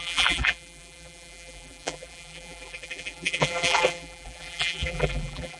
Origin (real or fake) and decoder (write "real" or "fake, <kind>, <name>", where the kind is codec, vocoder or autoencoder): fake, vocoder, BigVGAN v2